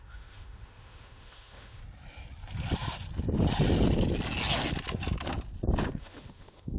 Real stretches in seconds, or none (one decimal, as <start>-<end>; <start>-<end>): 1.8-5.9